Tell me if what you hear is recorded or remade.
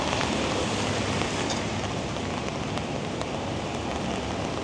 recorded